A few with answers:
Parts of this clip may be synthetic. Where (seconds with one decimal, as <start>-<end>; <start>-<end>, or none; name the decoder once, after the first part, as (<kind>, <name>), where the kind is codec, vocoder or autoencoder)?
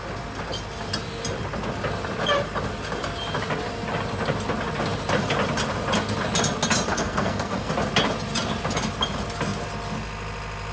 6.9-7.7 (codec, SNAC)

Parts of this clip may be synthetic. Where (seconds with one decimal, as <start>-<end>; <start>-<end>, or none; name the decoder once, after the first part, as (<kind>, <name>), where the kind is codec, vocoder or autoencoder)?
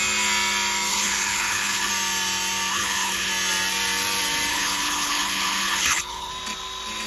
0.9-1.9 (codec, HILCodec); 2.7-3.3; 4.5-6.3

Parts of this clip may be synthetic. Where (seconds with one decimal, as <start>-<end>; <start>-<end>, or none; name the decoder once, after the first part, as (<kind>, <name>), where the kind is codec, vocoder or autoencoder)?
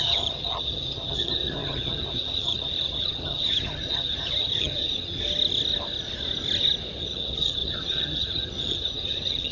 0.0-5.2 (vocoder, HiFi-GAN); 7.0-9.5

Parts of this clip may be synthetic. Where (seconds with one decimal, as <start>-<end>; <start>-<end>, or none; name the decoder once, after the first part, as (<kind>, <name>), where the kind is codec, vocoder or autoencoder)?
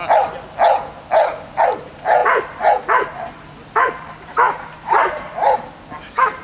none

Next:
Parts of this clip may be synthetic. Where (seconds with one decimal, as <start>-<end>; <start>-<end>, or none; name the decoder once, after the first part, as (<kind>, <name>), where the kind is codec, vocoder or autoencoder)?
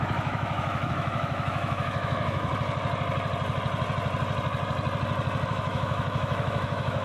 0.0-2.5 (autoencoder, DAC-VAE); 5.5-7.0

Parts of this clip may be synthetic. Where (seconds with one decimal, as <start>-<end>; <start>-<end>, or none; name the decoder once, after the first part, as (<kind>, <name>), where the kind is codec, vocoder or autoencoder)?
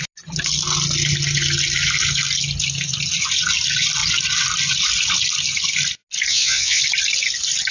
6.3-6.8 (vocoder, WaveNeXt)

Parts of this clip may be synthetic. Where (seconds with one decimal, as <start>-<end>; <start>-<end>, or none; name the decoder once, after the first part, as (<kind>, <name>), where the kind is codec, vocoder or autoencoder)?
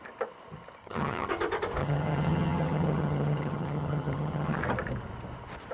0.8-1.3 (vocoder, HiFi-GAN); 1.8-4.6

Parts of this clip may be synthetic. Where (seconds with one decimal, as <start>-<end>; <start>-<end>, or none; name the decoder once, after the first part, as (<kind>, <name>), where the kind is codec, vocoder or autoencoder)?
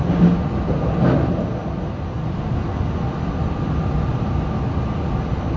none